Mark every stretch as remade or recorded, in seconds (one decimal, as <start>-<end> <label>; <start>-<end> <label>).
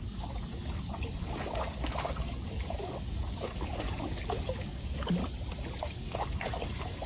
0.0-5.2 remade; 5.2-5.8 recorded; 5.8-7.1 remade